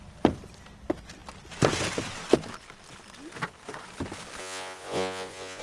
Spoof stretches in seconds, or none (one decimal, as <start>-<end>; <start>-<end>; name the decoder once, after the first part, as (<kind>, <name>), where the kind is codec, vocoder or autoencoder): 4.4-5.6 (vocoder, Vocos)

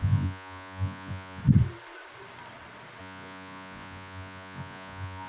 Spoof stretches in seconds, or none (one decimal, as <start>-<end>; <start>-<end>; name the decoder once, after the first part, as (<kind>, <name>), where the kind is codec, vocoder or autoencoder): 0.0-1.4 (vocoder, Vocos); 3.0-5.3

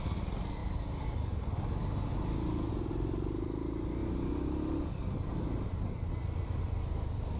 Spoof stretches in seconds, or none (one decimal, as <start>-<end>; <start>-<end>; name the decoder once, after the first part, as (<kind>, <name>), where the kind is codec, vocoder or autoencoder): none

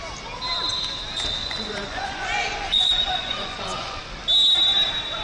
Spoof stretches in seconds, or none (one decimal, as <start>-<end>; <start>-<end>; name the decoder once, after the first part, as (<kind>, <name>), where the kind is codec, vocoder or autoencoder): 1.4-4.0 (vocoder, Vocos)